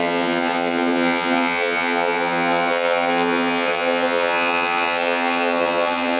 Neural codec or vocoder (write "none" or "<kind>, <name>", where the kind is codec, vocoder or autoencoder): vocoder, HiFi-GAN